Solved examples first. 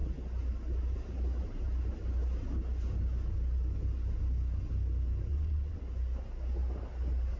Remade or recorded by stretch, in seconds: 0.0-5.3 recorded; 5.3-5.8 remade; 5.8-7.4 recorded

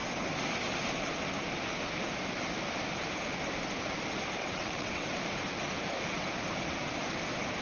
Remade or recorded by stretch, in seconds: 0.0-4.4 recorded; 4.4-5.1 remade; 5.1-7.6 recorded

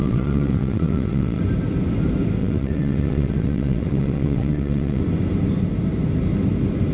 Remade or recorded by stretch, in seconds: 0.0-1.4 remade; 1.4-2.4 recorded; 2.4-5.0 remade; 5.0-6.9 recorded

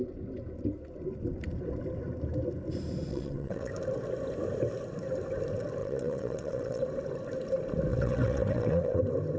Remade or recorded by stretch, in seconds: 0.0-3.1 recorded; 3.1-3.7 remade; 3.7-5.8 recorded; 5.8-6.8 remade; 6.8-7.9 recorded; 7.9-9.0 remade; 9.0-9.4 recorded

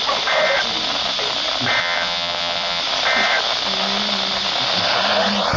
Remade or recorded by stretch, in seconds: 0.0-1.8 recorded; 1.8-2.8 remade; 2.8-5.6 recorded

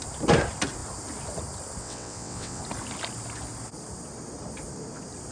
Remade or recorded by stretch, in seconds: 0.0-1.8 recorded; 1.8-2.6 remade; 2.6-5.3 recorded

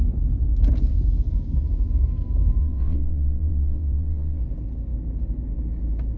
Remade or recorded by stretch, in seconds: 0.0-2.6 recorded; 2.6-4.4 remade; 4.4-6.2 recorded

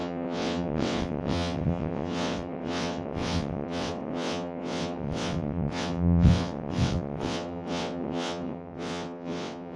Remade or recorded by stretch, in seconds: 0.0-9.8 remade